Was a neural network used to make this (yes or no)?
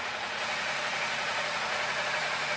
yes